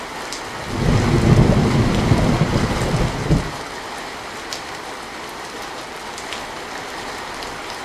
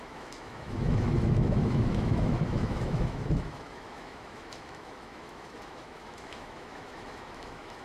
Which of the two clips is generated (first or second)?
second